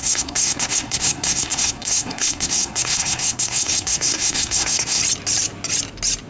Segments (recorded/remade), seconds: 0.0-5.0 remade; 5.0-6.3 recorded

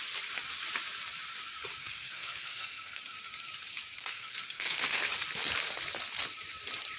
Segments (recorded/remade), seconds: 0.0-1.8 recorded; 1.8-3.0 remade; 3.0-4.0 recorded; 4.0-5.1 remade; 5.1-7.0 recorded

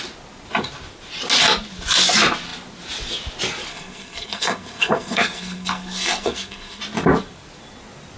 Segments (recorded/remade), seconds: 0.0-3.7 recorded; 3.7-6.8 remade; 6.8-8.2 recorded

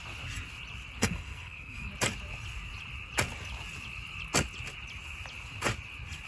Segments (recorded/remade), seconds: 0.0-1.0 recorded; 1.0-1.9 remade; 1.9-6.3 recorded